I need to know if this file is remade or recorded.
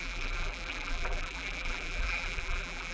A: remade